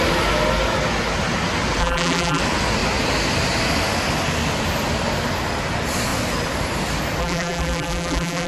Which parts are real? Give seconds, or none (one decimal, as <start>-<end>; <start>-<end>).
0.0-1.8; 2.4-7.2